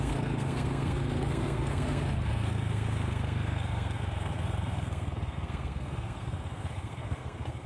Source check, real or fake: fake